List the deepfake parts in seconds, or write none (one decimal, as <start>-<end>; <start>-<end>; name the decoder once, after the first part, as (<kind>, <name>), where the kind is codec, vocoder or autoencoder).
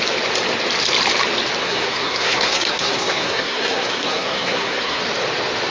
1.6-5.0 (codec, SNAC)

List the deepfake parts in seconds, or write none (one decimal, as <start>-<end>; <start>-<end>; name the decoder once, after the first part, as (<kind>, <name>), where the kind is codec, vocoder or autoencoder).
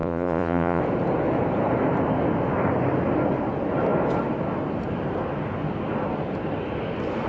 0.0-0.8 (vocoder, Vocos)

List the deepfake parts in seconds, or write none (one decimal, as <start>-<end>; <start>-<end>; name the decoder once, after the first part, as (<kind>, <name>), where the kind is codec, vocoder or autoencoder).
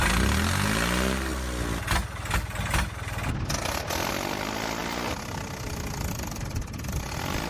none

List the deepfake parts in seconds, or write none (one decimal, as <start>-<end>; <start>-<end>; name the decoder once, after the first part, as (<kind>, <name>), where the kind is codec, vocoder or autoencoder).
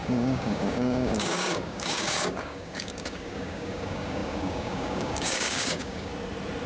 0.0-6.1 (codec, DAC)